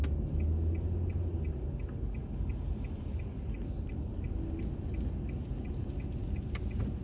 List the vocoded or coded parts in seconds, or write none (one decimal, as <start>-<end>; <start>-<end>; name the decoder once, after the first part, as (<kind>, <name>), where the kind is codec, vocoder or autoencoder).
none